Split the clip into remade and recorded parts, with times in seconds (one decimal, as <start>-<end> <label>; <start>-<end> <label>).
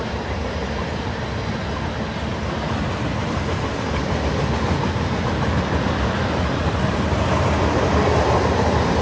0.0-9.0 recorded